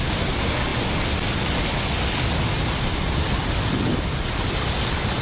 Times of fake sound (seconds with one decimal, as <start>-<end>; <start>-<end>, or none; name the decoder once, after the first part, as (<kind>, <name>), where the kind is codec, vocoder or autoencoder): none